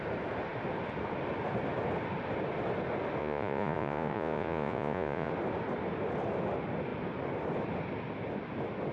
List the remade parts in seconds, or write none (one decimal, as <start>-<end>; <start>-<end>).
3.2-5.3